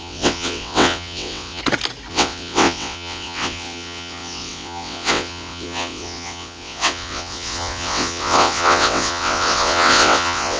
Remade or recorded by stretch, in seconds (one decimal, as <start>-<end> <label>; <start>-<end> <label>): 0.0-1.6 remade; 1.6-2.1 recorded; 2.1-10.6 remade